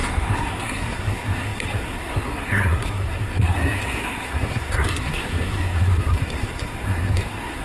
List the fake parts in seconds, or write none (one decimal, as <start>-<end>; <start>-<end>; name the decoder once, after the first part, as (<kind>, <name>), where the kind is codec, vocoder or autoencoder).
0.0-7.6 (codec, SNAC)